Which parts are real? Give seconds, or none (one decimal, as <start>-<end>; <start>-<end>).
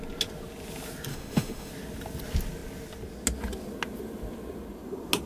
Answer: 0.0-1.1; 1.7-5.3